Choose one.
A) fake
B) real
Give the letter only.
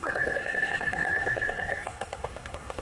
A